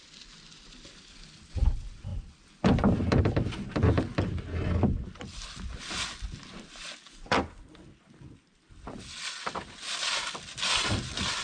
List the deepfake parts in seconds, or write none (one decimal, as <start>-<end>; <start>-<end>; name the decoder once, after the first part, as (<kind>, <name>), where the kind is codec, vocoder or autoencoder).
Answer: none